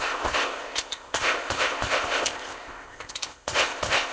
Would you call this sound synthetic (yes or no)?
yes